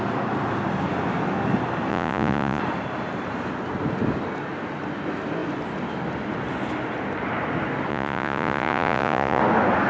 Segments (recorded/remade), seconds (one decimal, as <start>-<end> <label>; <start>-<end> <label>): 0.0-1.9 recorded; 1.9-2.6 remade; 2.6-7.9 recorded; 7.9-9.4 remade; 9.4-9.9 recorded